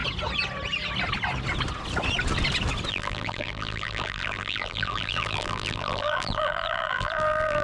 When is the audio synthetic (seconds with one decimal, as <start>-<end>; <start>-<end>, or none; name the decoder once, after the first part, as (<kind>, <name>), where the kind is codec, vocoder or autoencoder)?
2.9-7.6 (vocoder, BigVGAN v2)